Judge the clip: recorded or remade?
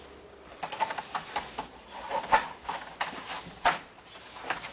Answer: recorded